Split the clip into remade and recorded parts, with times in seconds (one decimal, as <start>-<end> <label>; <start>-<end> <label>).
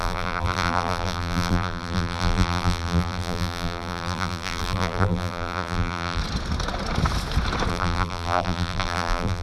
0.0-6.2 remade; 6.2-7.7 recorded; 7.7-9.4 remade